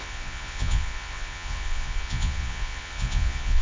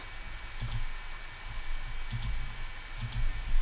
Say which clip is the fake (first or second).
first